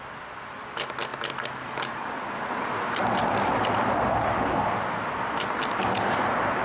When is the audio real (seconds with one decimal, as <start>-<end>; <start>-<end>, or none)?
0.0-6.6